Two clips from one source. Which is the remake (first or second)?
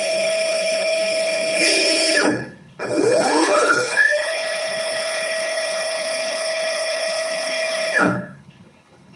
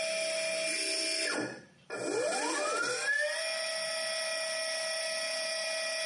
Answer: first